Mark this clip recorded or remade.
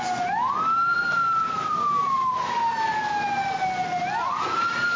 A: recorded